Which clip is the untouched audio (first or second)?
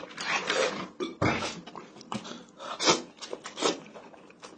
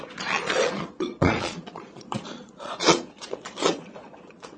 first